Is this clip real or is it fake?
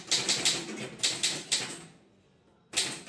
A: real